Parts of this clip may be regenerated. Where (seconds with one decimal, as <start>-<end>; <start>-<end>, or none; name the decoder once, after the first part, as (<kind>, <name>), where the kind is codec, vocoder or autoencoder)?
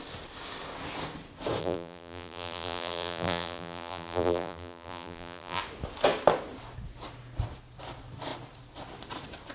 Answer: 1.6-5.6 (vocoder, BigVGAN v2)